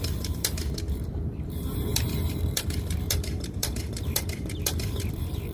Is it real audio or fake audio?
fake